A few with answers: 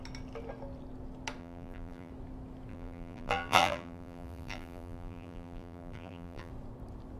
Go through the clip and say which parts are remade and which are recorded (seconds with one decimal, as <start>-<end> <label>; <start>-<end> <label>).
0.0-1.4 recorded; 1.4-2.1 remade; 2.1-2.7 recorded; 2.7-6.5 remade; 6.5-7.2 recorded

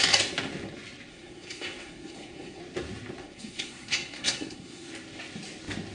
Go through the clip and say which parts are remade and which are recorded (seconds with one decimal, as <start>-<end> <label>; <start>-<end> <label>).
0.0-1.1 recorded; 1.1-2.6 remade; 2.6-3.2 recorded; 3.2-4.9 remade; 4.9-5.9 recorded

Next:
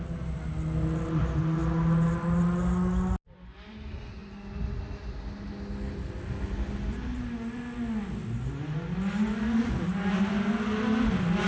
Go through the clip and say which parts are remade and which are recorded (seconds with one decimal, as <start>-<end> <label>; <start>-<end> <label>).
0.0-11.5 recorded

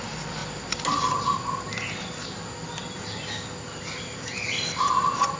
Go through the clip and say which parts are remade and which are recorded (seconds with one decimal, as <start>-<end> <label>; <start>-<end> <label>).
0.0-5.4 recorded